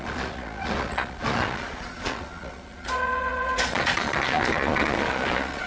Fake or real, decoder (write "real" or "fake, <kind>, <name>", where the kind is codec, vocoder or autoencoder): fake, vocoder, Vocos